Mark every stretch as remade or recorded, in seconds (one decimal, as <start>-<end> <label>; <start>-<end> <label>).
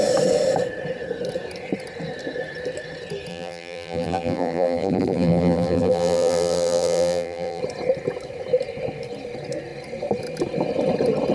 0.0-3.3 recorded; 3.3-7.6 remade; 7.6-11.3 recorded